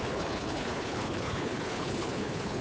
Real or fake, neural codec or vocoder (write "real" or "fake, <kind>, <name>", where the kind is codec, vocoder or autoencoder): fake, codec, HILCodec